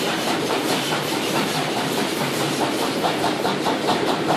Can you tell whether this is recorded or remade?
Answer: remade